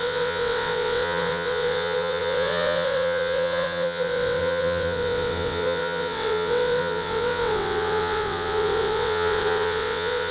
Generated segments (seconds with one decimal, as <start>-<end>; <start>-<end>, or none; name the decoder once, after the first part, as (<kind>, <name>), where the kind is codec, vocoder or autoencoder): 0.0-10.3 (vocoder, WaveNeXt)